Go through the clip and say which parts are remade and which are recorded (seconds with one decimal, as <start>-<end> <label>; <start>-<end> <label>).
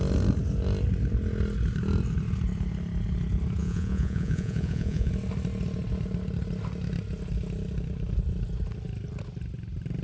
0.0-3.6 recorded; 3.6-5.1 remade; 5.1-10.0 recorded